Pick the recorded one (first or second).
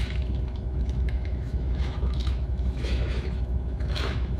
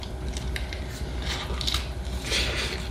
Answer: second